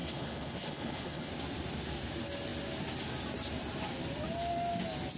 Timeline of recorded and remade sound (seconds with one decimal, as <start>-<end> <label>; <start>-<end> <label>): 0.0-1.3 remade; 1.3-5.2 recorded